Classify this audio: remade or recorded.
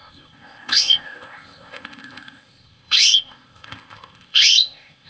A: remade